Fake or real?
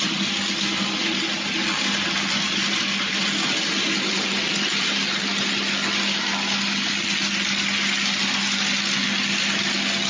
real